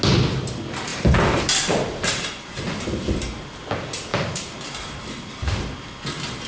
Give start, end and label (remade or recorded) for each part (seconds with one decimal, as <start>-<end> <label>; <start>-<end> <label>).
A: 0.0-0.9 recorded; 0.9-3.6 remade; 3.6-4.1 recorded; 4.1-5.0 remade; 5.0-6.5 recorded